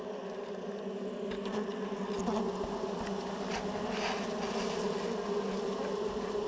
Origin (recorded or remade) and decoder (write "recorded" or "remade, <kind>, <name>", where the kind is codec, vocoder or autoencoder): recorded